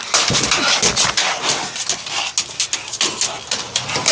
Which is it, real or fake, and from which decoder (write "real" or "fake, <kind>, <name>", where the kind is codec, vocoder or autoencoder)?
real